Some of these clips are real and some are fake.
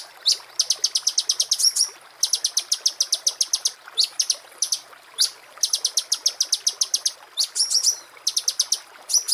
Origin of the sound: real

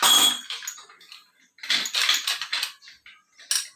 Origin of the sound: real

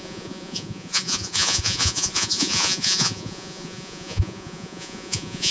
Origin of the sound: fake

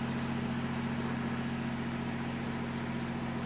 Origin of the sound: real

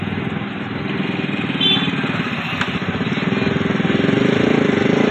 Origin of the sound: real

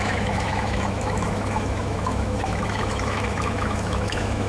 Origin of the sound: fake